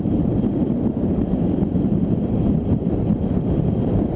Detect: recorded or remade recorded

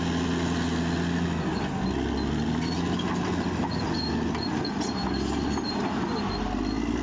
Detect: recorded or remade recorded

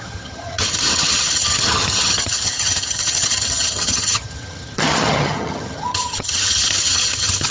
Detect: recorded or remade remade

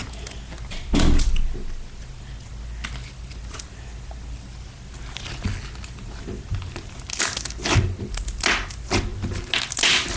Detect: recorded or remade recorded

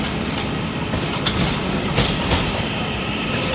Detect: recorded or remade recorded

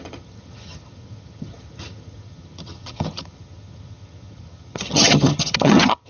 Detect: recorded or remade remade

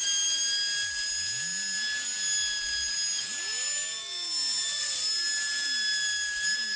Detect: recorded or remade recorded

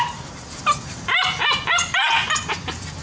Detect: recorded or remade recorded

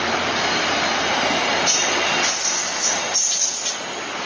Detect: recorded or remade recorded